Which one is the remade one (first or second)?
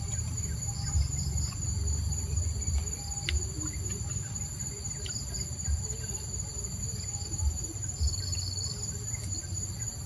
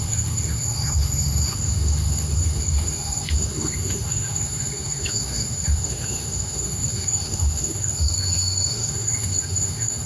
second